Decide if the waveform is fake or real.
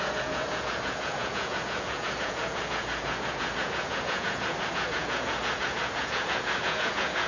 fake